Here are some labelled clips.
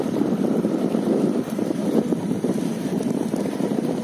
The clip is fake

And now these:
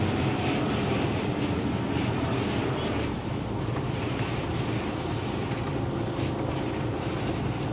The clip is real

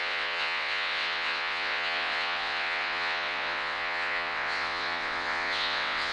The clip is fake